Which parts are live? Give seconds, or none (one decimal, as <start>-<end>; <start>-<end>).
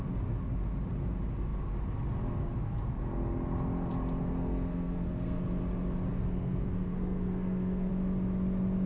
0.0-4.3; 5.4-6.1; 7.9-8.9